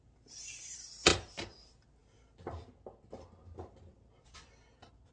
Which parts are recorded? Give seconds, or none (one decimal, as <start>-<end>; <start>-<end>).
0.0-5.1